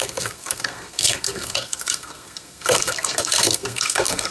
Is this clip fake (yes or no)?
yes